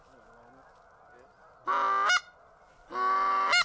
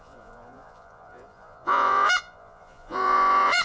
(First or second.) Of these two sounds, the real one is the first